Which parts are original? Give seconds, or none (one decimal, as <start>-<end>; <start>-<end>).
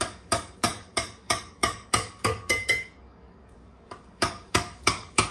none